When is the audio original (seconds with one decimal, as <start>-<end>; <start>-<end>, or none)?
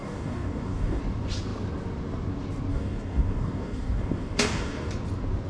1.0-2.7; 4.9-5.5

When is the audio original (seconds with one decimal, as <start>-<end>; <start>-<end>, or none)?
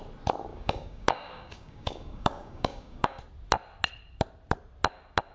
0.0-0.5; 3.2-5.3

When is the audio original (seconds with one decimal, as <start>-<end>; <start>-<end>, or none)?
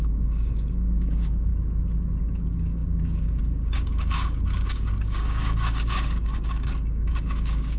1.5-2.2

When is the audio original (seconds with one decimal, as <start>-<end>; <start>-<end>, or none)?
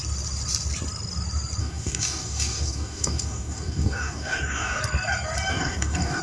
0.0-1.6; 4.8-5.5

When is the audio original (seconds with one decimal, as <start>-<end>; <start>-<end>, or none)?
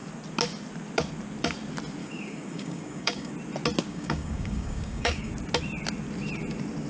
0.0-2.0; 3.3-3.9; 5.3-6.9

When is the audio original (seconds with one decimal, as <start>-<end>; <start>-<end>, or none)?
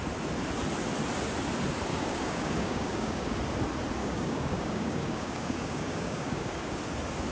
0.0-1.9; 3.4-4.0; 6.8-7.3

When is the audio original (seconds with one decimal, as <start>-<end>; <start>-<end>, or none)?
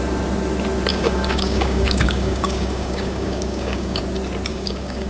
0.0-0.9; 4.0-4.5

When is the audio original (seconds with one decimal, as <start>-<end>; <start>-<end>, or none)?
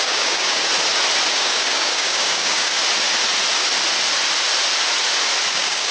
0.7-1.3; 2.8-5.5